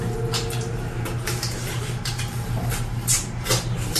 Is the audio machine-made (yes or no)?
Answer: yes